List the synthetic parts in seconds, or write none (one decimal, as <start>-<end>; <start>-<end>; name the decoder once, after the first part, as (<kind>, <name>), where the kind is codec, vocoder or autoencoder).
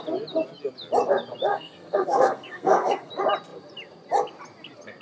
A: 1.5-3.1 (codec, SNAC)